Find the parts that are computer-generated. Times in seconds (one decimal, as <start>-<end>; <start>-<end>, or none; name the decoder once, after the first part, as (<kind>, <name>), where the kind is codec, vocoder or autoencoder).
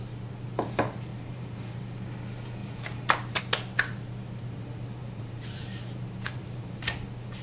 1.1-1.7 (vocoder, BigVGAN v2); 2.6-3.4; 5.0-6.8